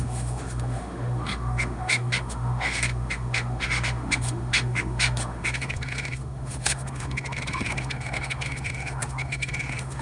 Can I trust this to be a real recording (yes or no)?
no